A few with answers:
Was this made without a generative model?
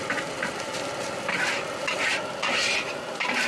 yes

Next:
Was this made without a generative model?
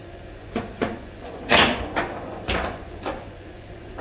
no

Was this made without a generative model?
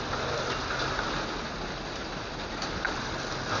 yes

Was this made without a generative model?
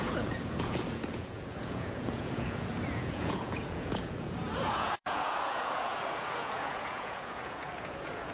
no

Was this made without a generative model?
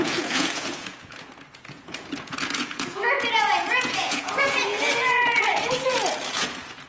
no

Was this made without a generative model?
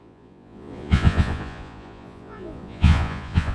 no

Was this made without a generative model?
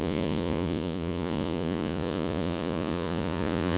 no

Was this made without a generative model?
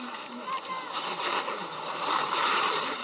yes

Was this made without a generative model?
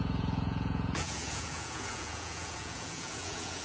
no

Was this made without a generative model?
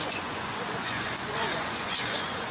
no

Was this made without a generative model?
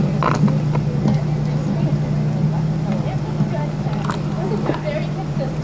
yes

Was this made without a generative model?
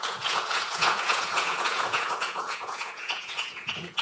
no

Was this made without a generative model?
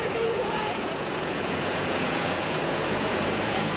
no